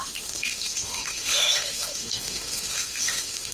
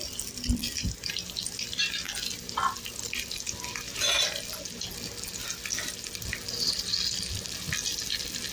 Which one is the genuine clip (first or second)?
second